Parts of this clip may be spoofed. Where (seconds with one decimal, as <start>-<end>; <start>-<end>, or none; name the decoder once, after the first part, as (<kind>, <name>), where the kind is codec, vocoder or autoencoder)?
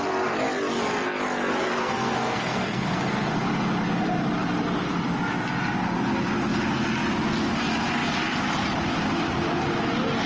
1.7-3.3 (codec, SNAC)